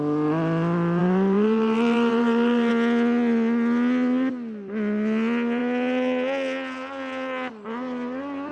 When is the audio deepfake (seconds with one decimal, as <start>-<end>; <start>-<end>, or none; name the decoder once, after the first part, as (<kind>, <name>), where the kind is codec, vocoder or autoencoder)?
1.0-2.7 (vocoder, BigVGAN v2)